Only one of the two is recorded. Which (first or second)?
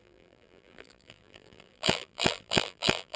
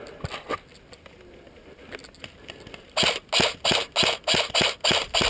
second